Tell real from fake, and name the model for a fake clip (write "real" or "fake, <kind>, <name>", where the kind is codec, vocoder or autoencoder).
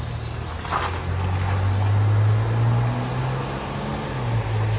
real